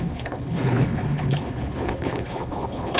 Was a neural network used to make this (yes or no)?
yes